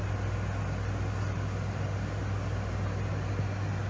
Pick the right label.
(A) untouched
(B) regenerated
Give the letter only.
A